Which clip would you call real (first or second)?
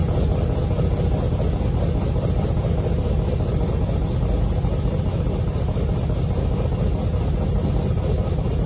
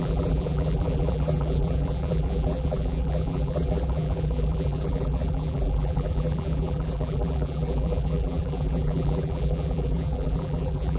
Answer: first